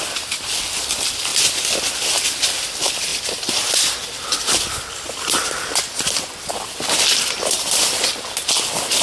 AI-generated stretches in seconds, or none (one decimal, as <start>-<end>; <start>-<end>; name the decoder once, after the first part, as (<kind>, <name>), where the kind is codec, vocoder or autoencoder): 3.1-6.2 (vocoder, BigVGAN v2)